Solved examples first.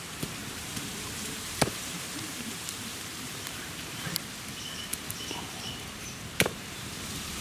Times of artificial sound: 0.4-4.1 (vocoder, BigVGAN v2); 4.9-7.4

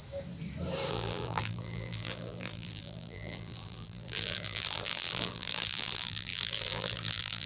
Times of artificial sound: 0.9-7.5 (vocoder, BigVGAN v2)

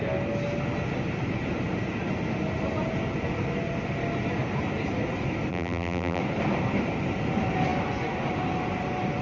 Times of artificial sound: 5.5-6.2 (vocoder, BigVGAN v2)

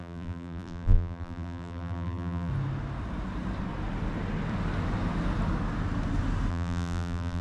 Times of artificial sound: 0.0-2.5 (vocoder, BigVGAN v2); 6.5-7.4

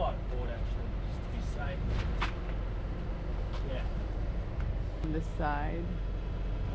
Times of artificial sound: 1.1-2.4 (vocoder, BigVGAN v2); 3.3-4.7